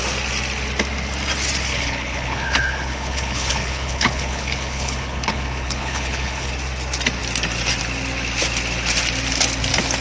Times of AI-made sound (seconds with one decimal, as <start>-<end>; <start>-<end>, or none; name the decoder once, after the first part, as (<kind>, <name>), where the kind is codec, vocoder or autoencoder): 1.7-6.5 (codec, HILCodec)